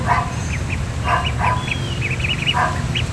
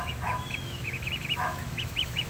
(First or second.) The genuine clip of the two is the first